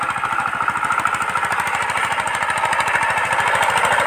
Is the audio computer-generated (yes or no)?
no